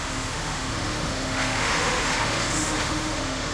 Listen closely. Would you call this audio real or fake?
fake